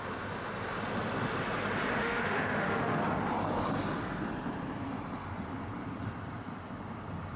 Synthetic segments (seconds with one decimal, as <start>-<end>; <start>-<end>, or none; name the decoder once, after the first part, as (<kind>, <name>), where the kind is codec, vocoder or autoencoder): 2.0-3.2 (autoencoder, DAC-VAE)